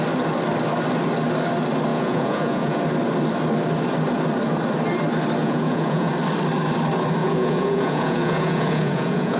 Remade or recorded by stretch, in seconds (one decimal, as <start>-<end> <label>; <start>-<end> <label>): 0.0-1.9 recorded; 1.9-2.8 remade; 2.8-5.4 recorded; 5.4-6.1 remade; 6.1-7.2 recorded; 7.2-9.4 remade